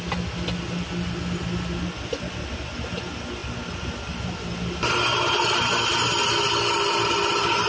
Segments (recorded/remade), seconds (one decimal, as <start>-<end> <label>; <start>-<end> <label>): 0.0-7.7 recorded